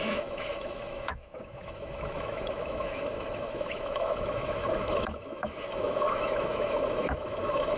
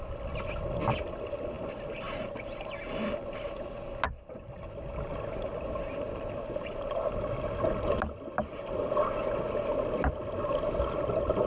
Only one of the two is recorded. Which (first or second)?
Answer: second